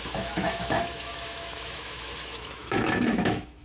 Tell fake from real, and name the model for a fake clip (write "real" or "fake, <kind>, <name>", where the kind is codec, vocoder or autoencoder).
fake, autoencoder, DAC-VAE